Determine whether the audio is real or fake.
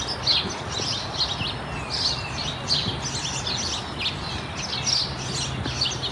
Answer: real